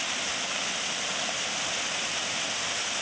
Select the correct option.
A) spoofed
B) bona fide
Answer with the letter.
B